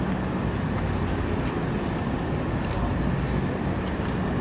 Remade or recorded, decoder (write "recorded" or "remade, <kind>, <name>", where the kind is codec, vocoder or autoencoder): recorded